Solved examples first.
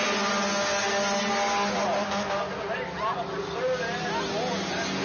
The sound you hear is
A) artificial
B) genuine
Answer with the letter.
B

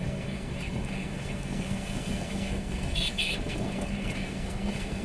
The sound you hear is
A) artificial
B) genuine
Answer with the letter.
A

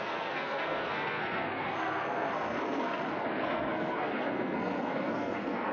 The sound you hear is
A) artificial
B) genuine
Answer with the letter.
A